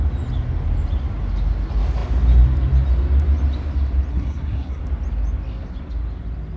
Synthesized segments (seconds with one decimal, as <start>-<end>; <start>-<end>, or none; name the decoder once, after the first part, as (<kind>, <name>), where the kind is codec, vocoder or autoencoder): 4.1-4.8 (codec, SNAC)